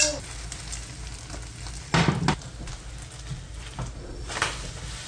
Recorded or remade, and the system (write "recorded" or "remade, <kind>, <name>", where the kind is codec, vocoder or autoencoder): recorded